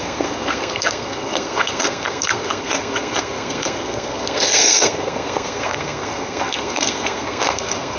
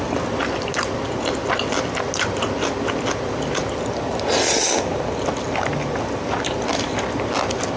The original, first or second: second